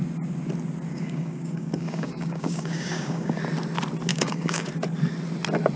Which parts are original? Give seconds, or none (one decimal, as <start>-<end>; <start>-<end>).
0.0-0.9; 3.4-4.1; 4.7-5.8